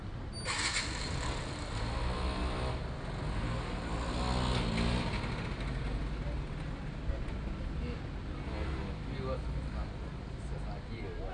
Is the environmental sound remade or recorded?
recorded